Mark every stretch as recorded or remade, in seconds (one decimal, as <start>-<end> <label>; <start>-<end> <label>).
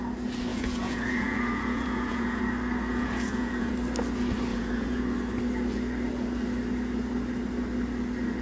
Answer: 0.0-0.5 recorded; 0.5-2.4 remade; 2.4-2.9 recorded; 2.9-3.7 remade; 3.7-4.5 recorded; 4.5-5.0 remade; 5.0-8.4 recorded